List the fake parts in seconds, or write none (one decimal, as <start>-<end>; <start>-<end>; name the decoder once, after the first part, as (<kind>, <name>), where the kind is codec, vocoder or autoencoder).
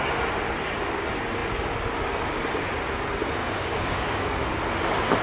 3.4-4.6 (codec, DAC)